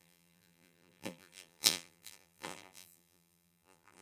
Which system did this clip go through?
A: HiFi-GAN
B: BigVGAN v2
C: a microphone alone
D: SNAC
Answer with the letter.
B